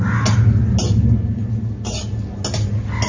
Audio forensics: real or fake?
real